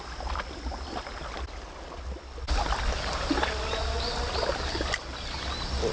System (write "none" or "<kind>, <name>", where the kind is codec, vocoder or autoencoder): none